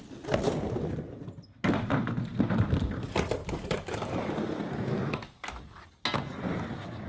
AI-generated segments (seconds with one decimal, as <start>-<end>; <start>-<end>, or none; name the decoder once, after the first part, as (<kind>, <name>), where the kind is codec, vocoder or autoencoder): 3.4-4.2 (codec, DAC)

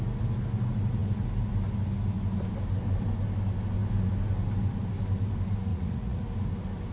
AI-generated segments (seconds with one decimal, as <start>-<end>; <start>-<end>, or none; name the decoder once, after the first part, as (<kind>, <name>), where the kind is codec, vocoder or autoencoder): 5.7-6.2 (vocoder, Vocos)

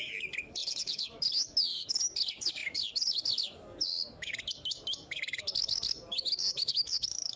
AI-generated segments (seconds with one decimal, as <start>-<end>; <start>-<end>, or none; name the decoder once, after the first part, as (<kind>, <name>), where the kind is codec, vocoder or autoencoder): 0.0-7.4 (codec, DAC)